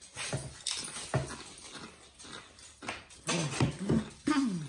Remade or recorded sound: recorded